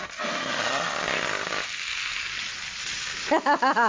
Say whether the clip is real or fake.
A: real